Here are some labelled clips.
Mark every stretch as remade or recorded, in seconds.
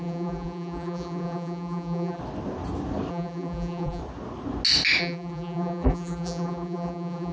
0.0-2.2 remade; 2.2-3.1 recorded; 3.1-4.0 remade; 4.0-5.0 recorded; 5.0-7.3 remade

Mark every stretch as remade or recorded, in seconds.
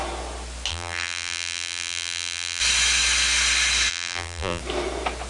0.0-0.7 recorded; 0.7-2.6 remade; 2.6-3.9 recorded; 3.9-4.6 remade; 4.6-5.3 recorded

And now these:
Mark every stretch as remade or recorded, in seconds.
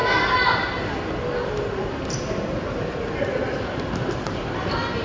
0.0-5.0 recorded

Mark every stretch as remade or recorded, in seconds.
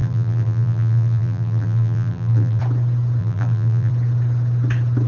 0.0-2.6 remade; 2.6-3.2 recorded; 3.2-3.9 remade; 3.9-5.1 recorded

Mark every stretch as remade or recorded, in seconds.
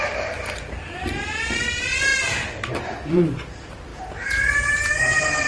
0.0-5.5 remade